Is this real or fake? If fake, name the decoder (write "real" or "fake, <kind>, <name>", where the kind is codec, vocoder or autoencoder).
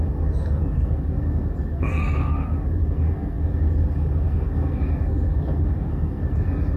fake, codec, SNAC